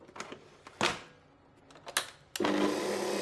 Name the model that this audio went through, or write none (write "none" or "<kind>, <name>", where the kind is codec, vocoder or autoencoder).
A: none